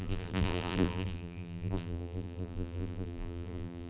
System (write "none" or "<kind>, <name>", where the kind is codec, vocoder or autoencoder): vocoder, BigVGAN v2